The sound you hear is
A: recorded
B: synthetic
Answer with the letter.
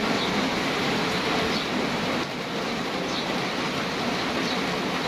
A